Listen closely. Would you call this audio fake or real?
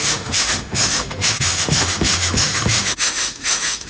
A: fake